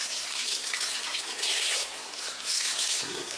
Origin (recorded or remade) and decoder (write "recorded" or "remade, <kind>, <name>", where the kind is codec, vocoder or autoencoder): remade, codec, SNAC